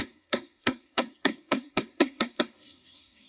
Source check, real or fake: fake